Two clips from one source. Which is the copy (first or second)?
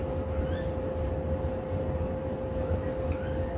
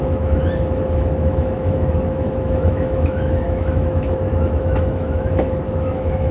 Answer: second